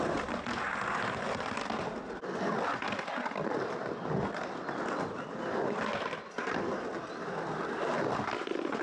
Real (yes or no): yes